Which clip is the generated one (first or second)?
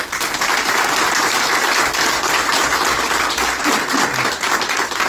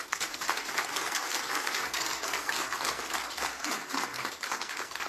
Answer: second